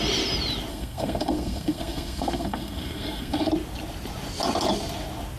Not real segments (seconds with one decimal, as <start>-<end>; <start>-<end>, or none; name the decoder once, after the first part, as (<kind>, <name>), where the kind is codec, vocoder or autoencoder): 0.7-3.5 (codec, SNAC)